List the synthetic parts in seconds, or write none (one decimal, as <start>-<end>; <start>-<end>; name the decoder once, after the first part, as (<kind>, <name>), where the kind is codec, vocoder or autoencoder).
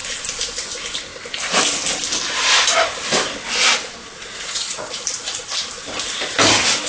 4.0-4.9 (vocoder, Vocos)